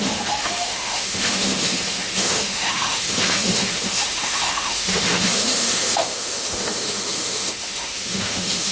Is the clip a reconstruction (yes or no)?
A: yes